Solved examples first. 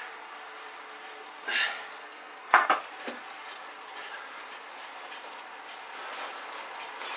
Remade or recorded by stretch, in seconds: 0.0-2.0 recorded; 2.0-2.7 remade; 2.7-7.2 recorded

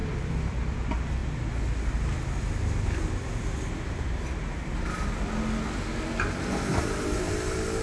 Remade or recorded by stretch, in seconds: 0.0-7.8 recorded

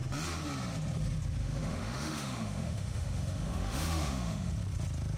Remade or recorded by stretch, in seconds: 0.0-1.4 recorded; 1.4-4.5 remade; 4.5-5.2 recorded

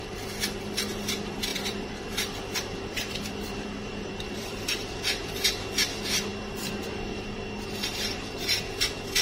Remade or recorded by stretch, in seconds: 0.0-1.5 recorded; 1.5-5.3 remade; 5.3-6.3 recorded; 6.3-8.6 remade; 8.6-9.2 recorded

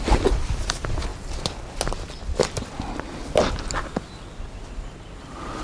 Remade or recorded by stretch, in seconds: 0.0-5.6 recorded

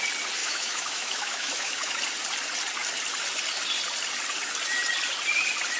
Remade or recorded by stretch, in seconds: 0.0-0.4 recorded; 0.4-2.0 remade; 2.0-5.8 recorded